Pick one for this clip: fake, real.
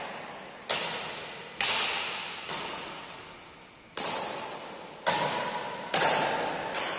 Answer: real